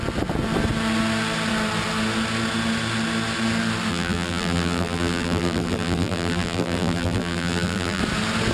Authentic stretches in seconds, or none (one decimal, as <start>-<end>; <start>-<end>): 0.0-3.9; 8.0-8.5